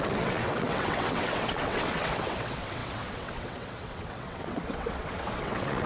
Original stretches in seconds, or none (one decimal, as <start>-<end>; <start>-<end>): none